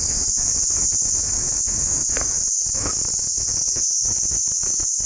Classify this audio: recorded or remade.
remade